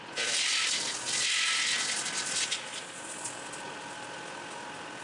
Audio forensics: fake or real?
real